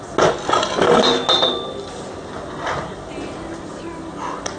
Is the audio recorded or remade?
recorded